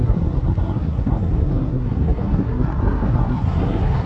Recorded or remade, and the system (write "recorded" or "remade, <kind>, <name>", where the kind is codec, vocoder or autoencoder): remade, codec, SNAC